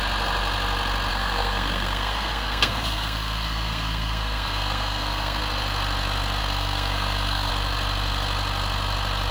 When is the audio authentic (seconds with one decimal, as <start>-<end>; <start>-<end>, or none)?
0.0-1.1; 5.4-6.4; 7.5-9.3